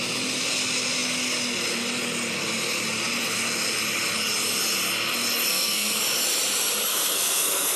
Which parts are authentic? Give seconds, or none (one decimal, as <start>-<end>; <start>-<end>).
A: 0.0-5.5; 6.0-6.9